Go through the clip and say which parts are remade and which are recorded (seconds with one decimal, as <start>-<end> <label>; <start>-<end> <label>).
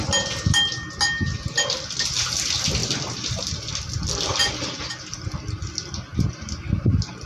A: 0.0-7.3 recorded